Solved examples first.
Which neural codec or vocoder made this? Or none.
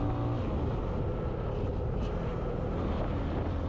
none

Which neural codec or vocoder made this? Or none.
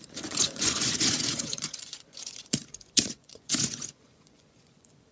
vocoder, Vocos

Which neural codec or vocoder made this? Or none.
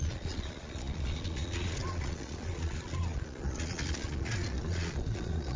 vocoder, Vocos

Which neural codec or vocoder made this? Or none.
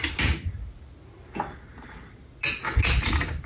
none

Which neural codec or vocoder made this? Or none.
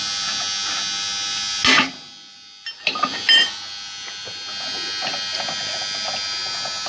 none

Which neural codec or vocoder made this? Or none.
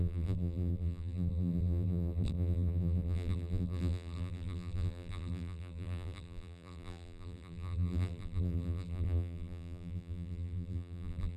vocoder, BigVGAN v2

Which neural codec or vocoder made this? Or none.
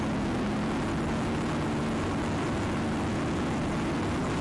none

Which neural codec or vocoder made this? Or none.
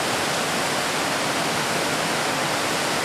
none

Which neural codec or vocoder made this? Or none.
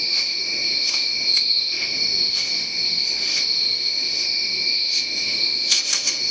autoencoder, DAC-VAE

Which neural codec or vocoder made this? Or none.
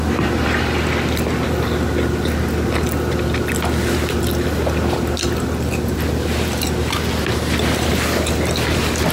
none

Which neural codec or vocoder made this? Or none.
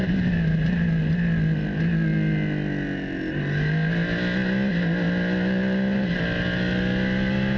none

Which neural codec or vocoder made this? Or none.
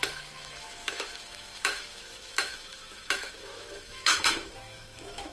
autoencoder, DAC-VAE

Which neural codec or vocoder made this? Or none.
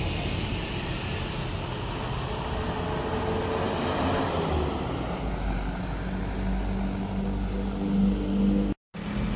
none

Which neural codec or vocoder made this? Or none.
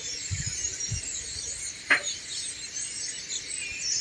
none